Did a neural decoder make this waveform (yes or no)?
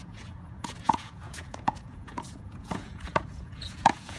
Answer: yes